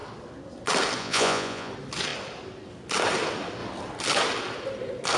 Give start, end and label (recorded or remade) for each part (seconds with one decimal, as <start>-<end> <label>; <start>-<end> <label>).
0.0-1.0 recorded; 1.0-1.7 remade; 1.7-5.2 recorded